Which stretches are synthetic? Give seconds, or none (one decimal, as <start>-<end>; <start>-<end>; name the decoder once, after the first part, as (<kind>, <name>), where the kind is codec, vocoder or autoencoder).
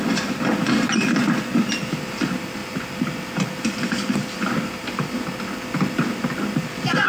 2.6-5.2 (vocoder, BigVGAN v2)